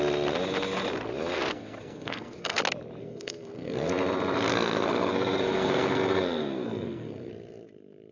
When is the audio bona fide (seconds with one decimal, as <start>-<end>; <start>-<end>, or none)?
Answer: 0.0-1.5; 2.6-3.0; 3.9-4.5; 7.3-8.1